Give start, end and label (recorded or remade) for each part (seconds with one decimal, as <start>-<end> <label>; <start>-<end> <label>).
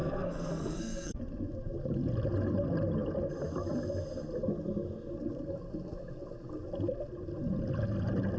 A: 0.0-1.2 remade; 1.2-8.4 recorded